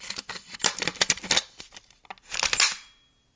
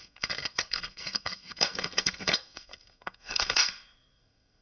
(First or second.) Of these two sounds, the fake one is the second